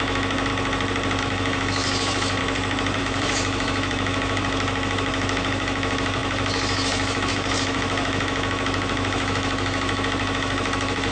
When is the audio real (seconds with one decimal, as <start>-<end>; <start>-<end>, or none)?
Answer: 0.5-1.2; 2.4-3.0